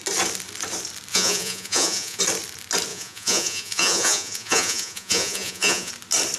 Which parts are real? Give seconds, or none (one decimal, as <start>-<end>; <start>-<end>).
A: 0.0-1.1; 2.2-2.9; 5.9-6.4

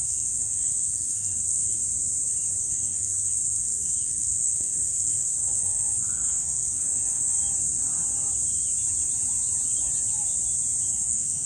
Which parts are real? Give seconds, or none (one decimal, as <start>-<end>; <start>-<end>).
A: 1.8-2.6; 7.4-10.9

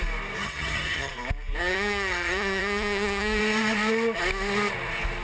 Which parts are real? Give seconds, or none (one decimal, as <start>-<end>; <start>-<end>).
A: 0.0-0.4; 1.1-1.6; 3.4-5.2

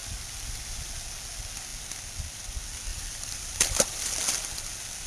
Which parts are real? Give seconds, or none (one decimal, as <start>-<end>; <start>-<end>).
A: 0.6-2.9; 4.2-5.1

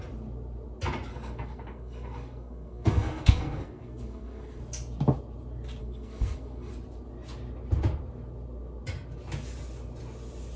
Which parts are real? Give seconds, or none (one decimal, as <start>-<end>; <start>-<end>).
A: 0.0-1.1; 4.6-5.8; 6.7-10.6

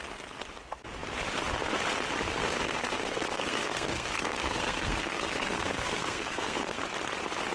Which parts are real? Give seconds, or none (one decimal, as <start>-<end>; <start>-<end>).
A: 0.0-2.3; 6.8-7.5